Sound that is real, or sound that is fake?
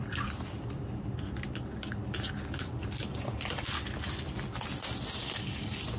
real